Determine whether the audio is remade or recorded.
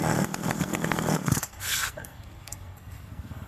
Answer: remade